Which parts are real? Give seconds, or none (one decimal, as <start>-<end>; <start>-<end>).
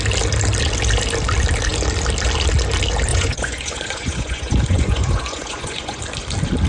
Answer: 0.0-3.1; 6.0-6.7